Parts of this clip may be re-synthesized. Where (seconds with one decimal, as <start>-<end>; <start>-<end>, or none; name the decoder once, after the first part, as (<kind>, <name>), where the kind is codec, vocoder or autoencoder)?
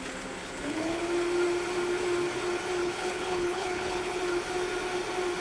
0.4-1.0 (codec, HILCodec); 2.8-4.2